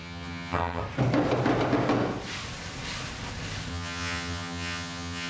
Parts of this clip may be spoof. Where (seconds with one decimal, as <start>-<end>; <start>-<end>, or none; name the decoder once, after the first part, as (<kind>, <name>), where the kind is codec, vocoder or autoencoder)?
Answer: 0.0-0.8 (vocoder, HiFi-GAN); 3.7-5.3